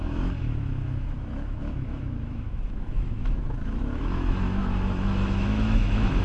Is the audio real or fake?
fake